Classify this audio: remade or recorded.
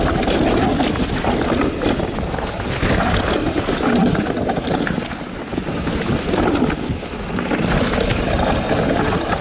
recorded